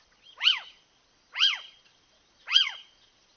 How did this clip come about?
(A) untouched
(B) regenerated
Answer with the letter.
B